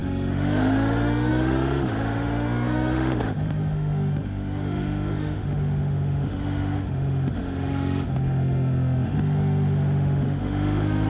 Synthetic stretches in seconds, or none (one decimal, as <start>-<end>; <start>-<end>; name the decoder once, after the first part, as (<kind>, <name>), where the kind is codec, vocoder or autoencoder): 0.0-11.1 (autoencoder, DAC-VAE)